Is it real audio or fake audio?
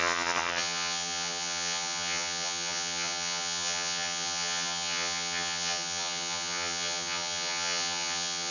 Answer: fake